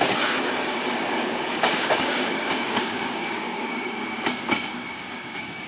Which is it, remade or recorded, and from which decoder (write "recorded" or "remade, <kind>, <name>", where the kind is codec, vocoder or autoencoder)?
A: remade, codec, DAC